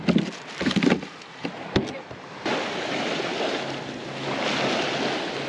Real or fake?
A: real